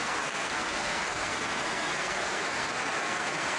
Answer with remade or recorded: remade